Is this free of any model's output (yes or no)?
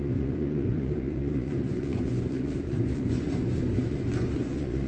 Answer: no